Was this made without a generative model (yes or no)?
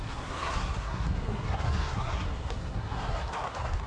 no